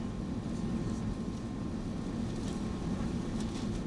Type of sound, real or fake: real